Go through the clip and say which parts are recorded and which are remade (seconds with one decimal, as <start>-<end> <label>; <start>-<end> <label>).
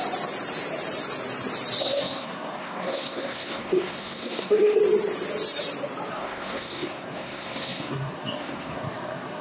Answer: 0.0-1.8 recorded; 1.8-4.8 remade; 4.8-6.1 recorded; 6.1-9.4 remade